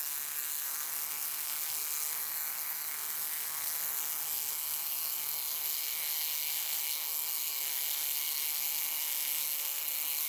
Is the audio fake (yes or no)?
yes